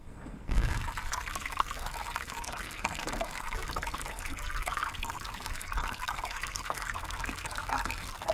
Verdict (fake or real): fake